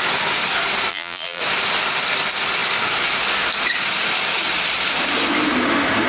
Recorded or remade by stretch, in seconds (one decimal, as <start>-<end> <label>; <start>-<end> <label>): 0.0-0.9 recorded; 0.9-1.4 remade; 1.4-6.1 recorded